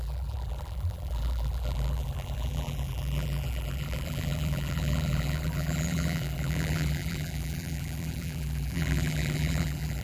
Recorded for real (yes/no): no